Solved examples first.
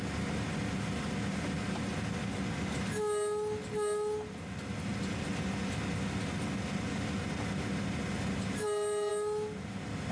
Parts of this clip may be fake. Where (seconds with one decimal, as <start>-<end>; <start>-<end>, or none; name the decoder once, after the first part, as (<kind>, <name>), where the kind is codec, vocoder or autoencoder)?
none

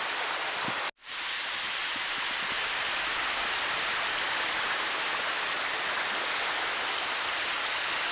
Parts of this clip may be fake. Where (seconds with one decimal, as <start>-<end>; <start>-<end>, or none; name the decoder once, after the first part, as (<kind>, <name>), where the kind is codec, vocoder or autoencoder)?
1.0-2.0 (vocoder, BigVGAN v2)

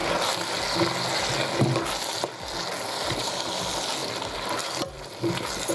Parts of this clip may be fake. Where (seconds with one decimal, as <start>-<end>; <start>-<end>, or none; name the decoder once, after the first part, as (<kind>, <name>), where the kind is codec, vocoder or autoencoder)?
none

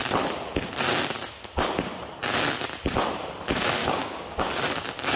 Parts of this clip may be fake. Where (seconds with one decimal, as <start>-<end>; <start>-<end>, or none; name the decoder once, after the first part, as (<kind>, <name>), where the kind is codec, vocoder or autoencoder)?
3.8-4.5 (codec, DAC)